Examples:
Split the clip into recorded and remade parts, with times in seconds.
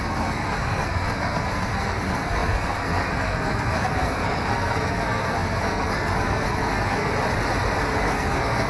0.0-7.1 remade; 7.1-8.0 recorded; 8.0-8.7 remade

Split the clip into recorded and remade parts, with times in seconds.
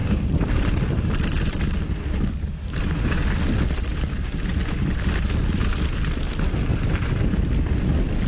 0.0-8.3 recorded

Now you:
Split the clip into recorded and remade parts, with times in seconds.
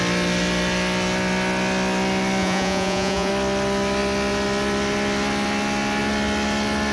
0.0-2.4 recorded; 2.4-3.3 remade; 3.3-6.9 recorded